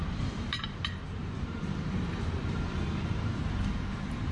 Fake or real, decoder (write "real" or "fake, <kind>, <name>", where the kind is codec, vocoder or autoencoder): fake, vocoder, BigVGAN v2